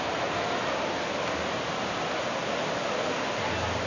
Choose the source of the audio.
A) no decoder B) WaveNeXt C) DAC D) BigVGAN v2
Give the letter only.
A